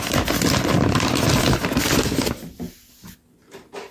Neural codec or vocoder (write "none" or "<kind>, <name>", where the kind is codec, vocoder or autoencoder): none